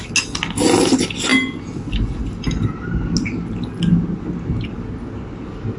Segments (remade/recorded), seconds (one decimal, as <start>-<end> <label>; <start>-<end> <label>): 0.0-5.8 recorded